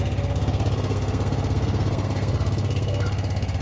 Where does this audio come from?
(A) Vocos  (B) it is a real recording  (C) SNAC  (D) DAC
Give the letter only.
C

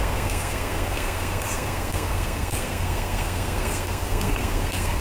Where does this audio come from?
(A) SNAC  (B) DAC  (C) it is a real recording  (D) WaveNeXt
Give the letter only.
A